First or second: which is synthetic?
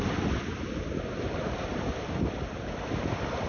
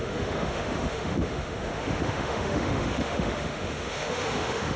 second